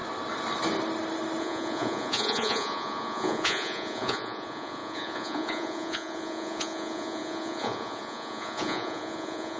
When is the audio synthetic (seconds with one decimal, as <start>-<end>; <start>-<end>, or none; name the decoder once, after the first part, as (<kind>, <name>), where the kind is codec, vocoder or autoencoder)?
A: 1.4-9.6 (vocoder, Vocos)